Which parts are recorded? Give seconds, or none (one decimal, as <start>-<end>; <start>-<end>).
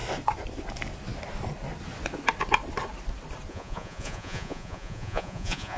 0.0-3.5